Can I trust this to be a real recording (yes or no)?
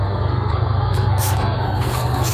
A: no